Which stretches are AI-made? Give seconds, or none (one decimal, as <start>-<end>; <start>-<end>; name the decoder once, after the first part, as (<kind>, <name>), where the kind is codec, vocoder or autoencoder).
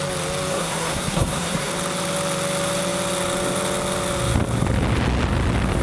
0.5-1.7 (codec, SNAC)